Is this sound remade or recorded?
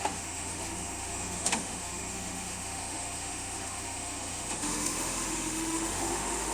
remade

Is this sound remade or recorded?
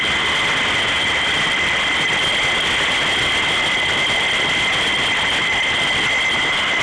recorded